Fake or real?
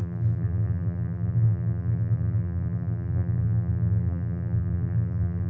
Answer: fake